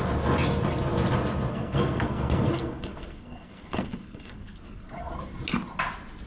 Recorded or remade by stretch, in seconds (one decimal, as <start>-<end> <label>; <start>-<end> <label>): 0.0-1.5 recorded; 1.5-5.1 remade; 5.1-6.3 recorded